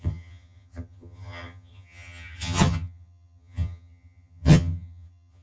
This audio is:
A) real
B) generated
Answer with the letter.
B